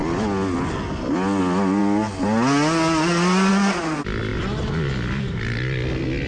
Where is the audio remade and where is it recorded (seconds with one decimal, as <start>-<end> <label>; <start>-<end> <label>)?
0.0-6.3 recorded